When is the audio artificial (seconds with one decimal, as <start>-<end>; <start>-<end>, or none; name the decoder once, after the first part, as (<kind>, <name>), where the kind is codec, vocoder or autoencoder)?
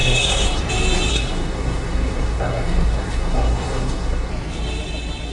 0.0-0.6 (codec, SNAC); 1.1-4.3